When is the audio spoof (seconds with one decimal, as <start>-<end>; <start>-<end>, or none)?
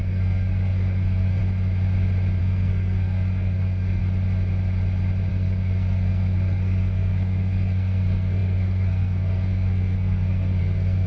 0.0-1.4; 2.4-4.0; 5.3-11.1